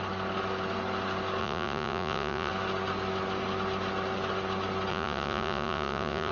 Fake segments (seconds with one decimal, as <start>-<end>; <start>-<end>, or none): 1.4-2.5; 4.9-6.3